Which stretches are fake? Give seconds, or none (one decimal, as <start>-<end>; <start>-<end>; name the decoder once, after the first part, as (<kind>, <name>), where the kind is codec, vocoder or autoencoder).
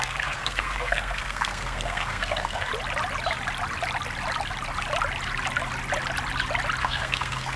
0.0-2.7 (codec, SNAC); 6.8-7.6